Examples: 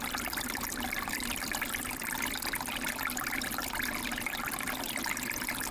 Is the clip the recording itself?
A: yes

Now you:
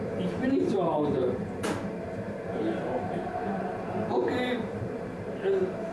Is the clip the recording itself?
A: no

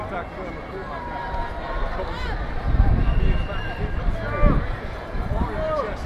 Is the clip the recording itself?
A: yes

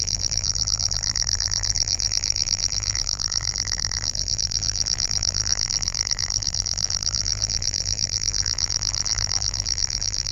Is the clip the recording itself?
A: no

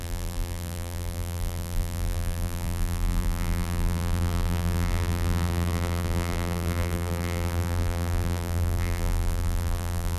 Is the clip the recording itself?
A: no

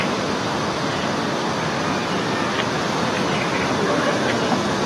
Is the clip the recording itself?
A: yes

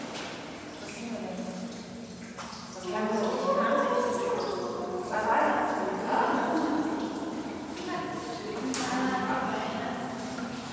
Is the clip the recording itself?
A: yes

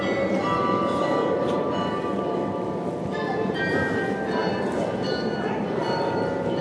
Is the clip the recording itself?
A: no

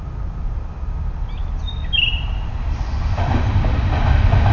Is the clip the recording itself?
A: yes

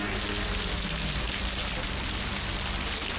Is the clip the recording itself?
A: yes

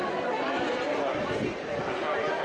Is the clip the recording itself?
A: no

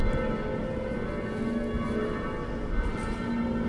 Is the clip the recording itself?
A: yes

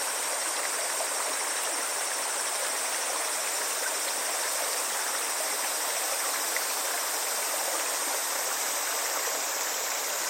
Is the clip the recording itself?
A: yes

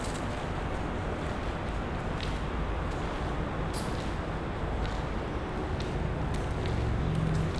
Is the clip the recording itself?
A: yes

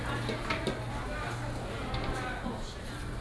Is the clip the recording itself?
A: yes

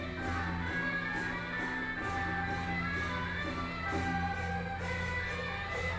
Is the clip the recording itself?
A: yes